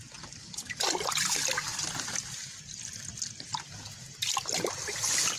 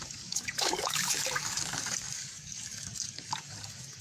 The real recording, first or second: first